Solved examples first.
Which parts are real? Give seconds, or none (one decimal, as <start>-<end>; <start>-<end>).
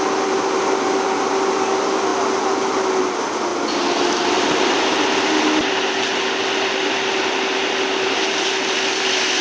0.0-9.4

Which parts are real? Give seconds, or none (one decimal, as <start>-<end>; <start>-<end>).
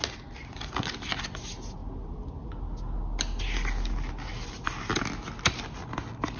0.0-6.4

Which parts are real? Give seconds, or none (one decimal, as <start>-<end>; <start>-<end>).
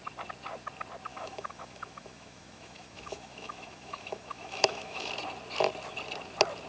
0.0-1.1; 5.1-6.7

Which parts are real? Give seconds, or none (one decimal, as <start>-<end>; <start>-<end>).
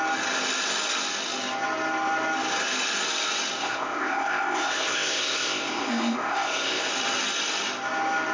0.0-3.6; 6.9-8.3